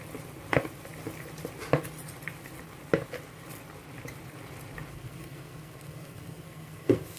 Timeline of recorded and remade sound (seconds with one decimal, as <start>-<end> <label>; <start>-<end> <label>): 0.0-4.9 recorded; 4.9-7.2 remade